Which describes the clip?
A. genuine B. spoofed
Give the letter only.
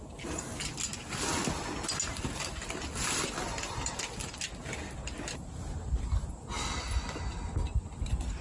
A